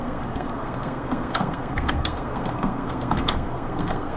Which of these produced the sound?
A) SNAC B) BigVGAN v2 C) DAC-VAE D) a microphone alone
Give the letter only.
A